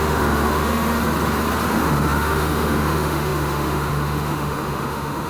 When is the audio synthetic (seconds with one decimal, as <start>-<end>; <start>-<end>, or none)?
0.0-1.0; 1.7-5.3